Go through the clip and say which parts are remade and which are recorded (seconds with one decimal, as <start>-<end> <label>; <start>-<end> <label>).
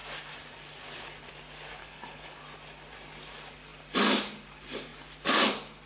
0.0-1.8 recorded; 1.8-2.4 remade; 2.4-5.9 recorded